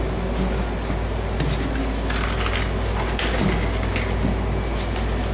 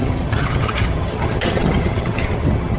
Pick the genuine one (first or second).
first